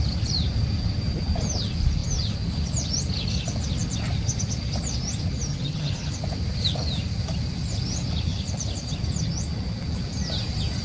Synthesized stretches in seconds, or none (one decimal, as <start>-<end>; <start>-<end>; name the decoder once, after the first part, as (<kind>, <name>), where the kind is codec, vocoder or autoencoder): 5.5-6.1 (vocoder, HiFi-GAN)